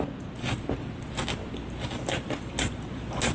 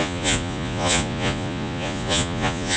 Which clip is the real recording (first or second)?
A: first